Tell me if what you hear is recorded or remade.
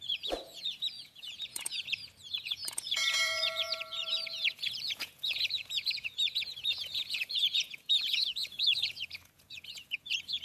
remade